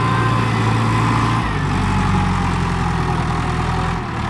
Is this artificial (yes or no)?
no